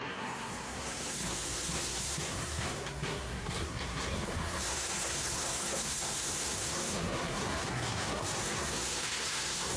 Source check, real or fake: fake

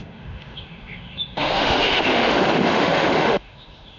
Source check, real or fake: fake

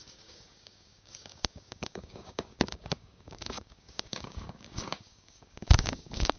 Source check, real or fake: fake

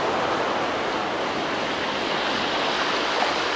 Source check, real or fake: real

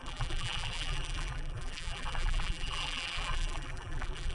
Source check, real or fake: fake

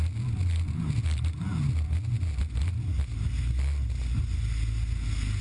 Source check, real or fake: real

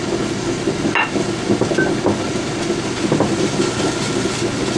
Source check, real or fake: real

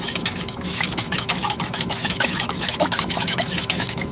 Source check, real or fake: fake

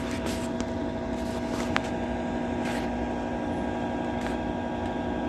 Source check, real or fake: real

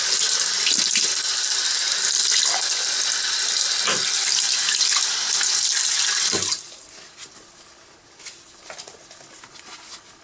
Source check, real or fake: real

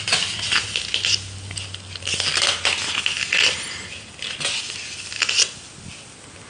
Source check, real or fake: real